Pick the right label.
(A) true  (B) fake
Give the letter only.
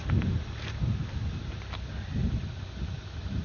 A